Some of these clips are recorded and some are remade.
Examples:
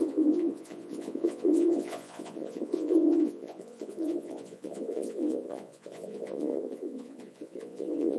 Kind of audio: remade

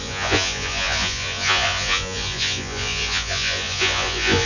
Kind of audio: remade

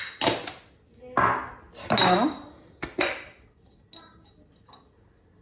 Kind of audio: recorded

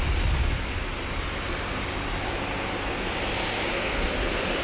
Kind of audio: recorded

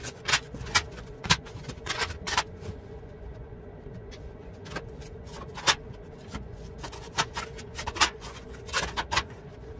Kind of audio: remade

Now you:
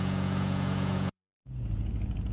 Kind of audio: remade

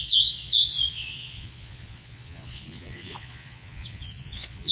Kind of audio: remade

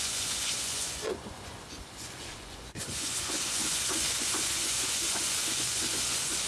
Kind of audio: remade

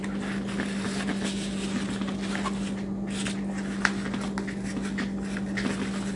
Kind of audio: recorded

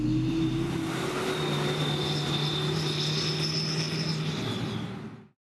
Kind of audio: recorded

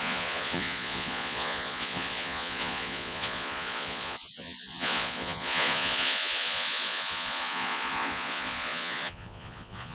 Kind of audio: remade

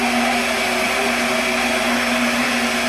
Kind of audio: recorded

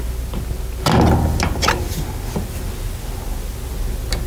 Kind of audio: recorded